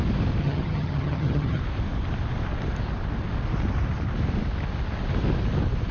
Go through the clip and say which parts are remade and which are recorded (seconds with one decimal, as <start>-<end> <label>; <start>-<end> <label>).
0.0-0.4 recorded; 0.4-1.6 remade; 1.6-5.9 recorded